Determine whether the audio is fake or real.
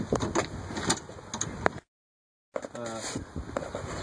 real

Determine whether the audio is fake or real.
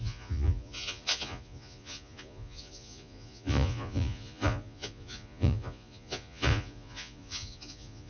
fake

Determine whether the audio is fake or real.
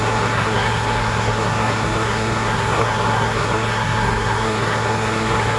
fake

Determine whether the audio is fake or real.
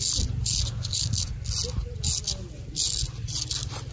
real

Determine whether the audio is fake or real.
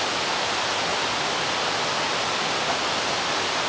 real